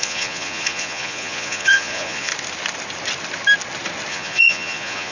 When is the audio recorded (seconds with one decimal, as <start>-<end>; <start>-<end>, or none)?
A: 2.3-4.1